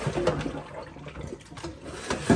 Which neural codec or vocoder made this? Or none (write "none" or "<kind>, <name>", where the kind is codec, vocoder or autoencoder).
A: none